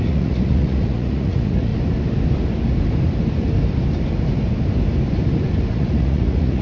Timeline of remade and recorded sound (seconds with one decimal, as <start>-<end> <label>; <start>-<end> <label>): 0.0-1.7 remade; 1.7-5.7 recorded; 5.7-6.6 remade